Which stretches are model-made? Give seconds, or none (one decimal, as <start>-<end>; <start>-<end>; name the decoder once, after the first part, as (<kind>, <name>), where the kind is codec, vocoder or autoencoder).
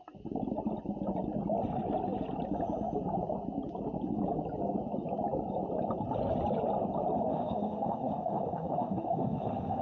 7.3-9.8 (autoencoder, DAC-VAE)